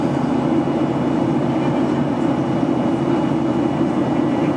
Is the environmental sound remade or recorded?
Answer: recorded